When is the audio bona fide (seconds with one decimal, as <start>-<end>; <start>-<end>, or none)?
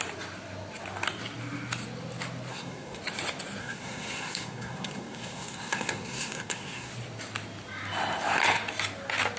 0.0-2.5; 3.0-3.6; 6.9-9.4